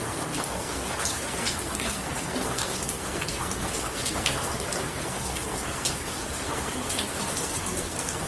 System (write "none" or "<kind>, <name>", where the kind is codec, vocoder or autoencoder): codec, SNAC